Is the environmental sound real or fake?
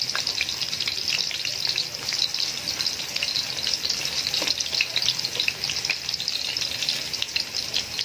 real